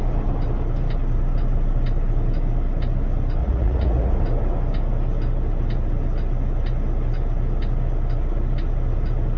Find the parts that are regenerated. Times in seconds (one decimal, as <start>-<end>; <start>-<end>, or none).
3.4-4.1